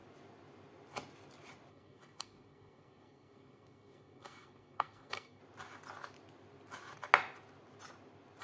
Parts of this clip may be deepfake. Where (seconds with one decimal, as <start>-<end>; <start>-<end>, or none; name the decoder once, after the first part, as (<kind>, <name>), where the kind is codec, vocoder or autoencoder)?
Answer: 1.7-5.4 (codec, SNAC)